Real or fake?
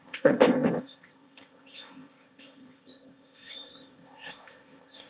fake